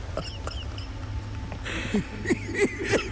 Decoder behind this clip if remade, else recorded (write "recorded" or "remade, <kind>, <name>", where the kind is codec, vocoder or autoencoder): recorded